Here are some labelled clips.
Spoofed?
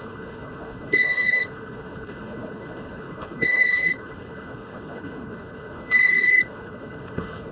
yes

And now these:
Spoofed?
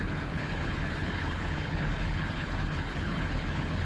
yes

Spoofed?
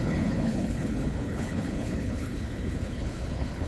yes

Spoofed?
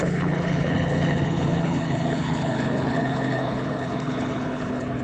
yes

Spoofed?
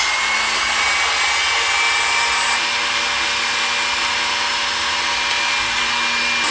no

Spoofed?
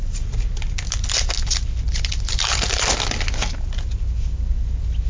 no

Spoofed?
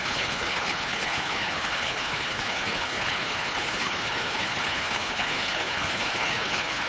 yes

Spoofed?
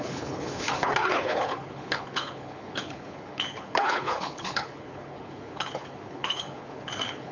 yes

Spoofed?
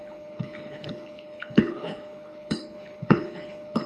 yes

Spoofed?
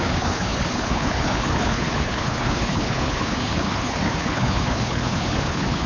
yes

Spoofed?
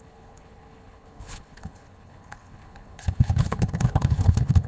yes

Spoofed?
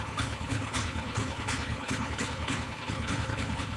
yes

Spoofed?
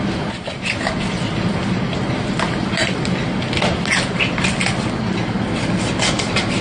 no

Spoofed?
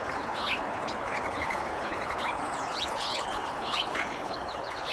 yes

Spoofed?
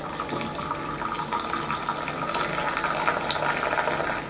no